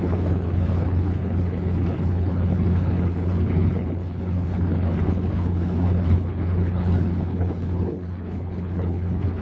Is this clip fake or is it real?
fake